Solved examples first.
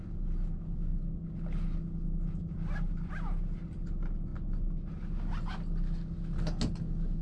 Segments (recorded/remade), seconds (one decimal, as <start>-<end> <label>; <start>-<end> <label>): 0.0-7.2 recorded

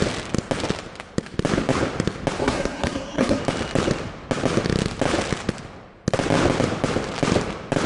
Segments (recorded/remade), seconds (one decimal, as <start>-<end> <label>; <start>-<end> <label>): 0.0-2.4 recorded; 2.4-3.4 remade; 3.4-7.9 recorded

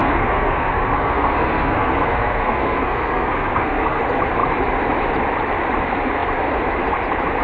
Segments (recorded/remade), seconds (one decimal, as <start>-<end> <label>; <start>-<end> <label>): 0.0-4.0 remade; 4.0-7.4 recorded